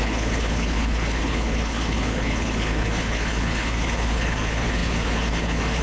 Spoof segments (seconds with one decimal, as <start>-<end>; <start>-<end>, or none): 0.0-5.8